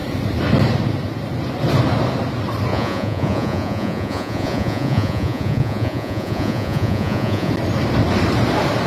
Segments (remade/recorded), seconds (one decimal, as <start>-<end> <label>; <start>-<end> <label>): 0.0-2.7 recorded; 2.7-7.5 remade; 7.5-8.9 recorded

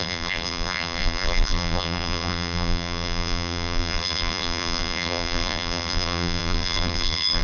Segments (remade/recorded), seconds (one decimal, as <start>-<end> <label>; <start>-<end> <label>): 0.0-7.4 remade

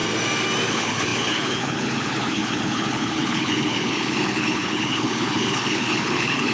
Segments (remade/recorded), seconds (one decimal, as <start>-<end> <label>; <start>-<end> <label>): 0.0-0.7 recorded; 0.7-6.5 remade

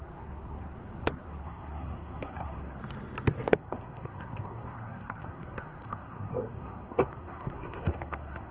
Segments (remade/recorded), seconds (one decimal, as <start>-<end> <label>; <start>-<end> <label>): 0.0-2.8 remade; 2.8-3.5 recorded; 3.5-8.5 remade